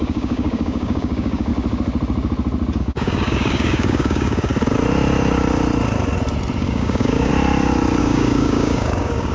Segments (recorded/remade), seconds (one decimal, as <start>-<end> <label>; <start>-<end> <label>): 0.0-1.5 remade; 1.5-2.8 recorded; 2.8-4.5 remade; 4.5-6.6 recorded; 6.6-7.3 remade; 7.3-8.0 recorded; 8.0-9.3 remade